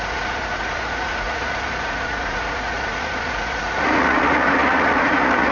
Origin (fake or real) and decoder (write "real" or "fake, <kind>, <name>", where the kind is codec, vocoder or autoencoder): fake, vocoder, Vocos